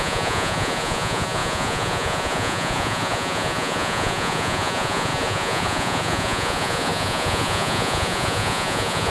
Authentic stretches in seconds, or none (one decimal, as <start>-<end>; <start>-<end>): none